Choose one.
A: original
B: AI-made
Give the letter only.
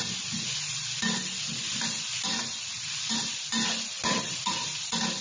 A